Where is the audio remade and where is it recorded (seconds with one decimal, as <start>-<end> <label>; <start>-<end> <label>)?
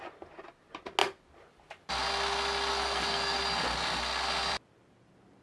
0.0-2.7 recorded; 2.7-3.4 remade; 3.4-5.4 recorded